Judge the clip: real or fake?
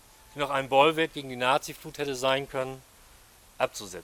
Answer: real